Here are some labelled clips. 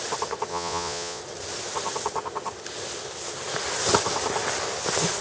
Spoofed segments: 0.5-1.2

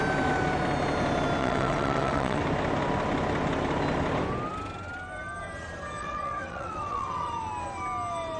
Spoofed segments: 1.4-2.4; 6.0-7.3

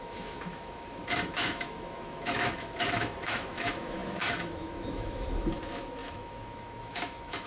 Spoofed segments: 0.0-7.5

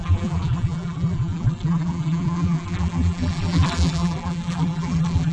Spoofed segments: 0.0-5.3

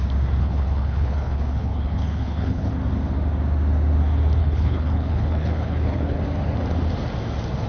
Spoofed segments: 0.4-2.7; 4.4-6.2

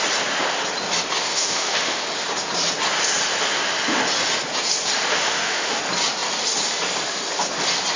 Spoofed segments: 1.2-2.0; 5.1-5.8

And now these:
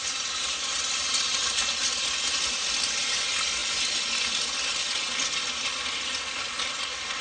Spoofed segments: none